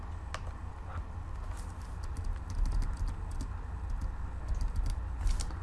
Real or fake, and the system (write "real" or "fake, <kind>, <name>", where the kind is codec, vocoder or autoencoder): real